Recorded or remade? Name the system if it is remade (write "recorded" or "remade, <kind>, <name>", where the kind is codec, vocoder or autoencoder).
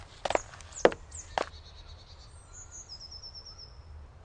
recorded